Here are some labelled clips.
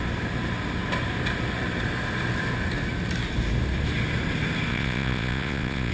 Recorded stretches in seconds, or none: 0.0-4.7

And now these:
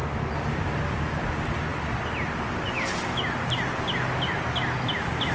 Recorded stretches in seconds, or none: 0.0-5.3